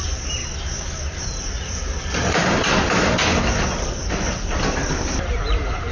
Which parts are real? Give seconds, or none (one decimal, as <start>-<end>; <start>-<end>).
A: 0.4-1.2; 2.4-3.5